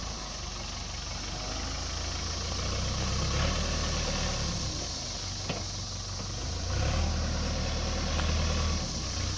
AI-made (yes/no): no